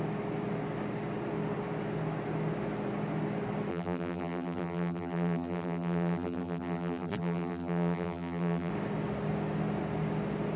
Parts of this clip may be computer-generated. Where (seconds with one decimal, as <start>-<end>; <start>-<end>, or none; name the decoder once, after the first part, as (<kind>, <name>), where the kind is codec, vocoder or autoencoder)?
3.7-8.7 (vocoder, BigVGAN v2)

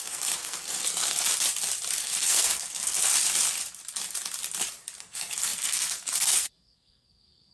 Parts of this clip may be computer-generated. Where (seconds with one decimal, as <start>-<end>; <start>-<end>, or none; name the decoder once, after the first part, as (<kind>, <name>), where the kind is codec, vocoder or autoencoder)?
0.0-1.3 (codec, SNAC); 2.0-3.1; 5.0-7.5

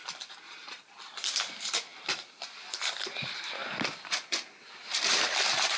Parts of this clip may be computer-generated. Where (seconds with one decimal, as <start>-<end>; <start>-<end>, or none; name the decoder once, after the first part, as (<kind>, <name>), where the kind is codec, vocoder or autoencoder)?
none

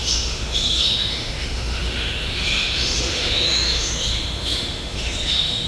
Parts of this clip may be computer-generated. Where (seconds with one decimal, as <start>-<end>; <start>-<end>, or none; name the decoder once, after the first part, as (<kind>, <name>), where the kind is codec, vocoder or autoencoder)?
0.0-5.7 (autoencoder, DAC-VAE)